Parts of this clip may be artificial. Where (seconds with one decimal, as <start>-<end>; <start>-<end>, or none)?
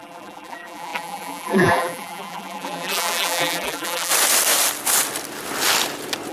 0.0-4.1